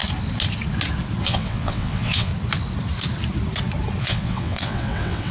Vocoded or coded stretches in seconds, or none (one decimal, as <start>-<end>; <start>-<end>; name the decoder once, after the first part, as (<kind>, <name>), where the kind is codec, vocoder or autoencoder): 1.2-2.3 (vocoder, WaveNeXt); 4.0-5.3